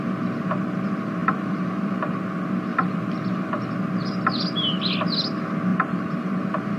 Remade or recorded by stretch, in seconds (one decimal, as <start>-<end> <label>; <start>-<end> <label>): 0.0-1.2 recorded; 1.2-2.2 remade; 2.2-2.7 recorded; 2.7-3.7 remade; 3.7-5.7 recorded; 5.7-6.8 remade